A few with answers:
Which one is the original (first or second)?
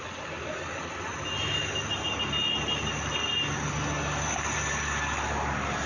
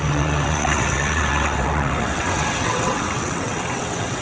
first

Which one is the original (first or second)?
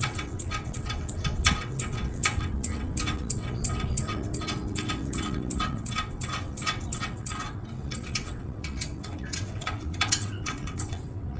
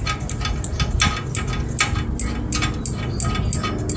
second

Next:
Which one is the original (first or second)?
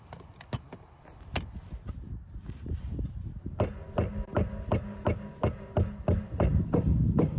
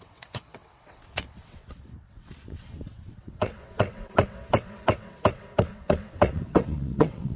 first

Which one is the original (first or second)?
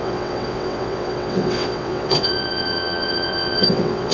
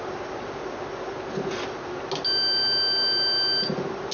second